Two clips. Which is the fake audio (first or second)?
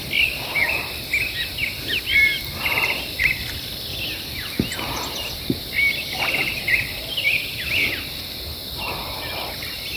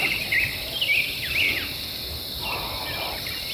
first